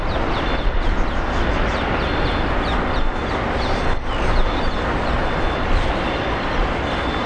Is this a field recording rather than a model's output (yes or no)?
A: yes